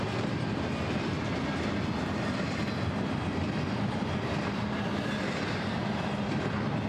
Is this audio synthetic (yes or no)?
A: no